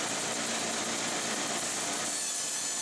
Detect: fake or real real